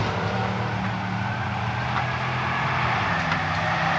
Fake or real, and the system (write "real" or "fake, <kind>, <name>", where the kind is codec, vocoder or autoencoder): real